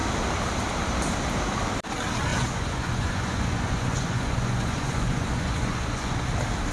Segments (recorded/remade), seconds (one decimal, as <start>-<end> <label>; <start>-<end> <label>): 0.0-2.3 recorded; 2.3-6.3 remade; 6.3-6.7 recorded